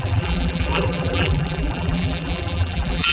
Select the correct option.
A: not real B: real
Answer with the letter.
A